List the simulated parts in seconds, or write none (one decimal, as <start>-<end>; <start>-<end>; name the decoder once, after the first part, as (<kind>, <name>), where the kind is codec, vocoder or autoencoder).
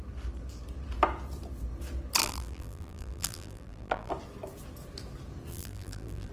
2.2-4.1 (vocoder, BigVGAN v2); 5.5-6.3